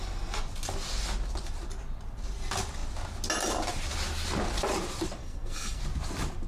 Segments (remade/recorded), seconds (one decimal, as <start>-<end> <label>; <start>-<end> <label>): 0.0-5.2 recorded; 5.2-5.8 remade; 5.8-6.5 recorded